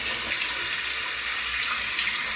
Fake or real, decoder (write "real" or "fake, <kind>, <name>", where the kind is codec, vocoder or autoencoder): real